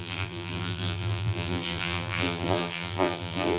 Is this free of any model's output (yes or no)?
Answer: no